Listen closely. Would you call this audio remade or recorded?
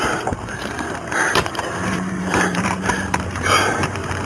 remade